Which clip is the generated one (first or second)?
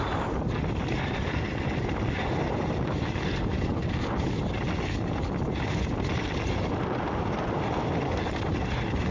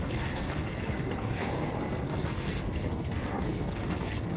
second